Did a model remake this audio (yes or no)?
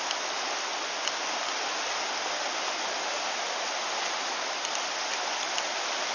no